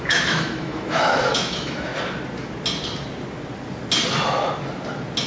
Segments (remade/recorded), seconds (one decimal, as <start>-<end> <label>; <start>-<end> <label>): 0.0-1.9 remade; 1.9-5.3 recorded

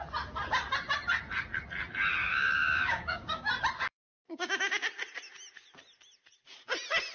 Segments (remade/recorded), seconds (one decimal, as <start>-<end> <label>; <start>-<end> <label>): 0.0-2.2 recorded; 2.2-3.5 remade; 3.5-3.9 recorded; 3.9-4.7 remade; 4.7-7.1 recorded

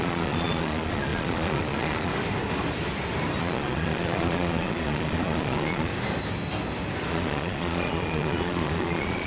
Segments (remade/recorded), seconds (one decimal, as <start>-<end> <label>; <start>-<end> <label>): 0.0-2.1 remade; 2.1-3.4 recorded; 3.4-5.9 remade; 5.9-7.1 recorded; 7.1-9.3 remade